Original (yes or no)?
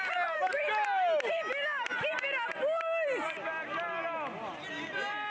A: yes